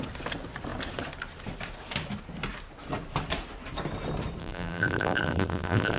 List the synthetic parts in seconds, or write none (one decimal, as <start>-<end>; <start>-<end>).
4.4-6.0